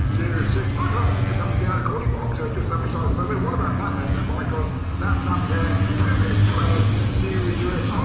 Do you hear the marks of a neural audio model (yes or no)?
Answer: no